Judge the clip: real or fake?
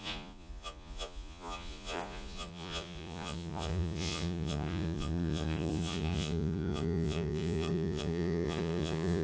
fake